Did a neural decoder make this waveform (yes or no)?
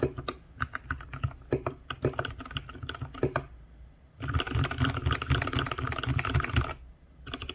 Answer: no